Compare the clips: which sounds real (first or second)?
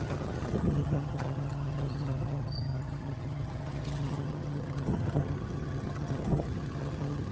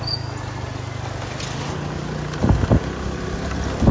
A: second